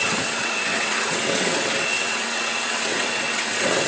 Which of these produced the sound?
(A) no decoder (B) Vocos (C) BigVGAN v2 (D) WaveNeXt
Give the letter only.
D